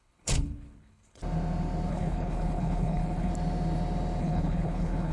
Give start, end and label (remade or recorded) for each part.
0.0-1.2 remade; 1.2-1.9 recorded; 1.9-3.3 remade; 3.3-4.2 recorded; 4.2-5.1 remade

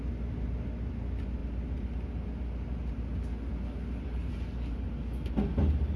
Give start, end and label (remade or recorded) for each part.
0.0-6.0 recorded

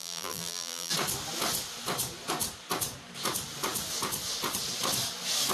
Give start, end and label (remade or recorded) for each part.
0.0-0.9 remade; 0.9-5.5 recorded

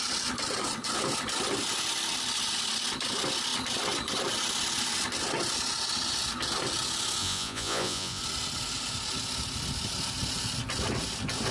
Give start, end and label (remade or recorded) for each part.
0.0-7.2 recorded; 7.2-8.2 remade; 8.2-11.5 recorded